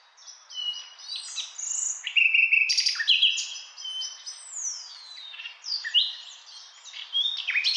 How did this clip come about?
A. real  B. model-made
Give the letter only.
A